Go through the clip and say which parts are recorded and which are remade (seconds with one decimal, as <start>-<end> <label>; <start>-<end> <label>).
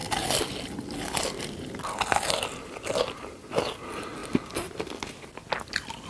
0.0-6.1 recorded